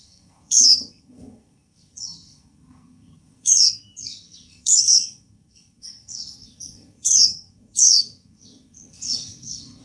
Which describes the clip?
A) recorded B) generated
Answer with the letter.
B